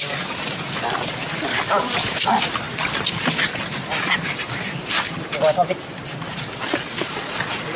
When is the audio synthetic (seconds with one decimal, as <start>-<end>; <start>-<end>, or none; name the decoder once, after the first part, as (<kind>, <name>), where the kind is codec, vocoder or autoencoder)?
1.5-2.4 (codec, DAC)